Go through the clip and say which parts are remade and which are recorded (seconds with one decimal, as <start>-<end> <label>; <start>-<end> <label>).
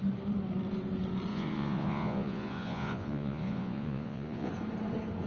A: 0.0-1.3 recorded; 1.3-4.5 remade; 4.5-5.3 recorded